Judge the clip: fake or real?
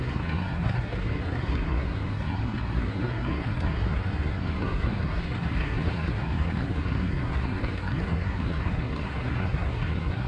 fake